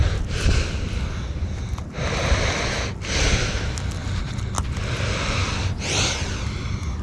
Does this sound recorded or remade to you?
recorded